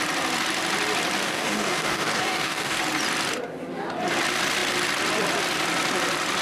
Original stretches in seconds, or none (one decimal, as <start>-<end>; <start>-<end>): 0.0-1.2; 2.8-6.4